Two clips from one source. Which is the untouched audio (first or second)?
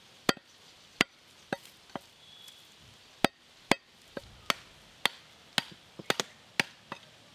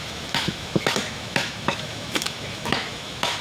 first